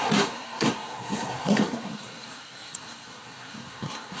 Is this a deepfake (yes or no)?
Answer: yes